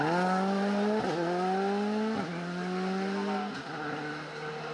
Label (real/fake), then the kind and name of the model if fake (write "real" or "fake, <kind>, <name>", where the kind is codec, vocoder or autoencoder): real